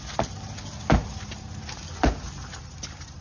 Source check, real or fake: real